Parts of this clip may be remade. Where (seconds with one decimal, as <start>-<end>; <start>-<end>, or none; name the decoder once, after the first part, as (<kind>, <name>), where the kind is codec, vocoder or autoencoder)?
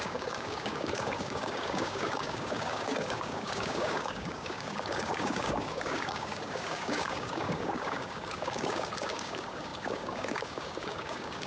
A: 0.0-11.5 (codec, DAC)